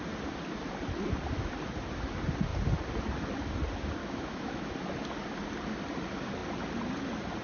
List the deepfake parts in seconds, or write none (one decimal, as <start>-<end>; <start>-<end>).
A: 4.0-4.7

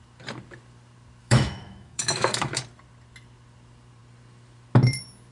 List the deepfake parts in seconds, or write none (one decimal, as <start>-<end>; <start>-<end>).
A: 1.2-2.6